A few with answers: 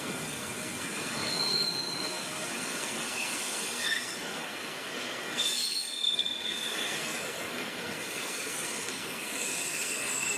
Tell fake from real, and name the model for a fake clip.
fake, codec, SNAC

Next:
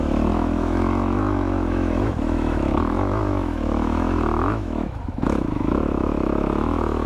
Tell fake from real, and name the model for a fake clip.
fake, autoencoder, DAC-VAE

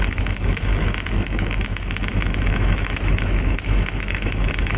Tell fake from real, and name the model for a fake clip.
fake, autoencoder, DAC-VAE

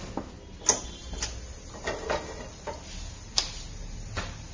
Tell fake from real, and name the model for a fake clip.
real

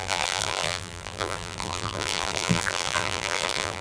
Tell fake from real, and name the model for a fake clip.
fake, vocoder, BigVGAN v2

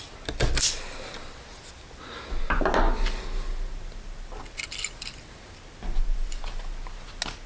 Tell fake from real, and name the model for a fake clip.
real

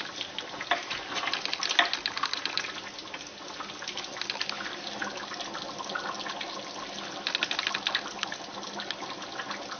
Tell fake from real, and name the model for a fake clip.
real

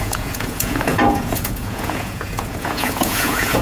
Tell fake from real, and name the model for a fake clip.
fake, vocoder, Vocos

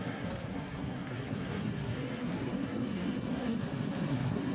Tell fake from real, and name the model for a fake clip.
fake, codec, SNAC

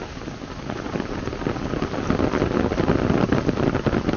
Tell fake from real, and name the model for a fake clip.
real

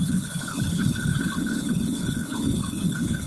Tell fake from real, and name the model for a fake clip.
fake, codec, HILCodec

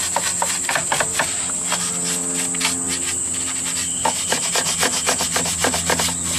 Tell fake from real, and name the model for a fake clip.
real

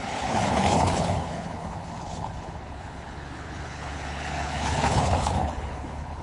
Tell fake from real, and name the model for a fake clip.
fake, codec, HILCodec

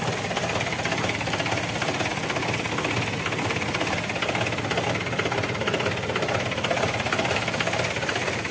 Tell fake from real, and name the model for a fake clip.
real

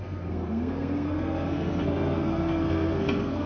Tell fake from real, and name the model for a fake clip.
fake, codec, SNAC